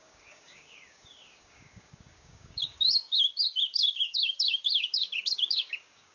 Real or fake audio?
fake